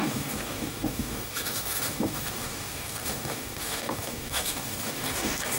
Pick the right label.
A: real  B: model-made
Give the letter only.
B